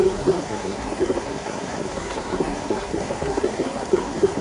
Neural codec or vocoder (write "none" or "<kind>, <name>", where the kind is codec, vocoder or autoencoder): codec, SNAC